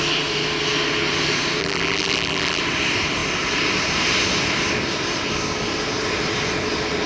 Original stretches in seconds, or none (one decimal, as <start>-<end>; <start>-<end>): 0.0-1.6; 2.6-7.1